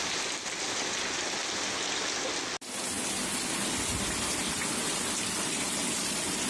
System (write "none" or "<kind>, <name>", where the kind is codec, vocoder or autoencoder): none